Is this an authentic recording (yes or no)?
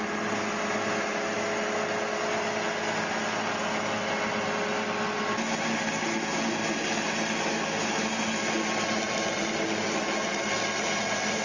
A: yes